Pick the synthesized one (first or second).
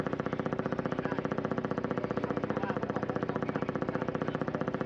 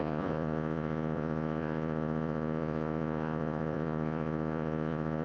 second